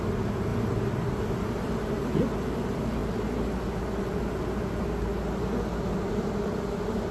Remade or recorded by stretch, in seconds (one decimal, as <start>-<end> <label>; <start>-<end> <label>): 0.0-0.5 recorded; 0.5-2.2 remade; 2.2-7.1 recorded

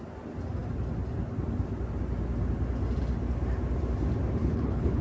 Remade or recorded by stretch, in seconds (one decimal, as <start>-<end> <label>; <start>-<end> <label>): 0.0-4.4 recorded; 4.4-5.0 remade